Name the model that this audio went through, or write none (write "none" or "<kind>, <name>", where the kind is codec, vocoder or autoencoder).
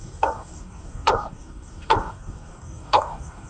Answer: codec, DAC